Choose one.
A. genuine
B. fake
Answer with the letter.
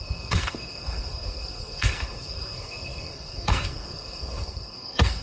B